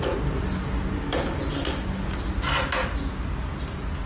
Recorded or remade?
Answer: recorded